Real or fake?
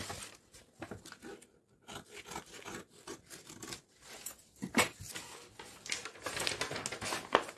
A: real